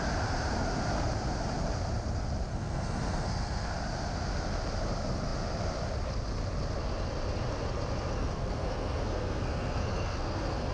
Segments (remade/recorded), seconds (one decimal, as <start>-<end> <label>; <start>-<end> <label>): 0.0-2.5 recorded; 2.5-3.7 remade; 3.7-8.2 recorded; 8.2-10.7 remade

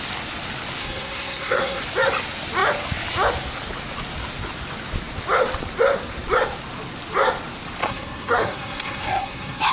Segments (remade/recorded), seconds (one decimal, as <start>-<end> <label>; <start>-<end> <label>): 0.0-0.8 recorded; 0.8-1.8 remade; 1.8-7.8 recorded; 7.8-9.7 remade

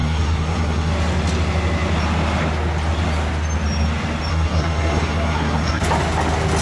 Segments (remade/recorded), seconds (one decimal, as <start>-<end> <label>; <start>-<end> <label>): 0.0-0.9 remade; 0.9-4.3 recorded; 4.3-5.8 remade; 5.8-6.6 recorded

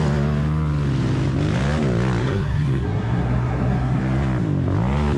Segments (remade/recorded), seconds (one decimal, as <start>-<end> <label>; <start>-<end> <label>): 0.0-2.2 recorded; 2.2-4.0 remade; 4.0-5.2 recorded

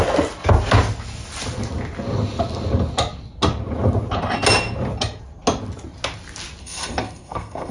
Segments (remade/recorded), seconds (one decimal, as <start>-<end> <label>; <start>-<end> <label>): 0.0-6.6 recorded; 6.6-7.7 remade

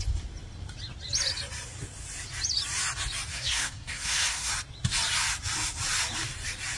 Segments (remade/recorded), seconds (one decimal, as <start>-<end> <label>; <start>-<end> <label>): 0.0-3.3 recorded; 3.3-4.5 remade; 4.5-6.8 recorded

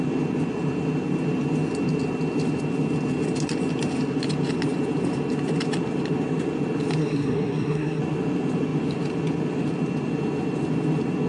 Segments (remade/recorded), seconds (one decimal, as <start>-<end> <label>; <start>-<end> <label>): 0.0-7.0 recorded; 7.0-8.0 remade; 8.0-11.3 recorded